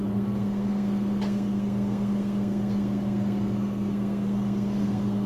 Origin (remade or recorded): remade